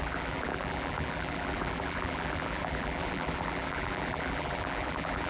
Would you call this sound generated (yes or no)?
yes